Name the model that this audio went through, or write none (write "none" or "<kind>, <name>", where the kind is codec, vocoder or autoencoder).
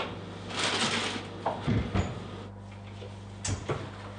none